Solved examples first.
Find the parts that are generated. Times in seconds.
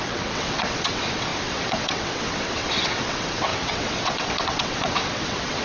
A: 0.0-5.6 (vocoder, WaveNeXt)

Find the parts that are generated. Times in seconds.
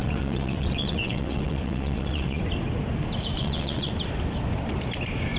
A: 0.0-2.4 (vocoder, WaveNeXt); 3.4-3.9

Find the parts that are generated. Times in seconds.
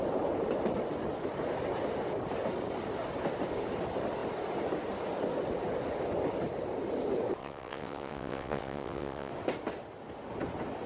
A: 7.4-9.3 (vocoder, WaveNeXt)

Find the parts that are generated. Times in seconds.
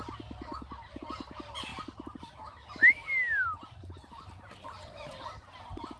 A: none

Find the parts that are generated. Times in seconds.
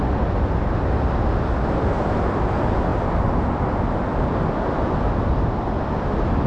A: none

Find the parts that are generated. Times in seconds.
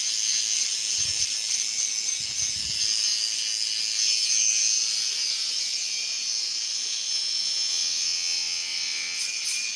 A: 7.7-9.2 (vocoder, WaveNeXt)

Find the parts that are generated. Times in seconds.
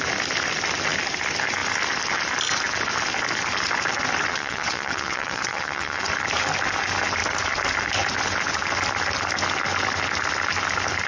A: 4.3-6.1 (vocoder, WaveNeXt)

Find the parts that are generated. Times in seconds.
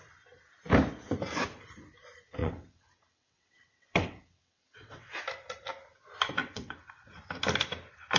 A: 2.4-5.2 (vocoder, WaveNeXt); 6.4-7.1